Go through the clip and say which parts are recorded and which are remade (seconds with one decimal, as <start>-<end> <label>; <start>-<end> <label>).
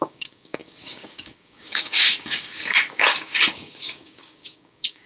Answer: 0.0-5.1 remade